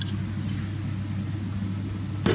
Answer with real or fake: real